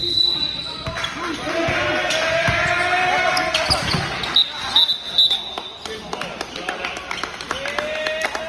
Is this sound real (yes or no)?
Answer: yes